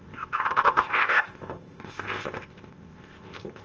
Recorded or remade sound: remade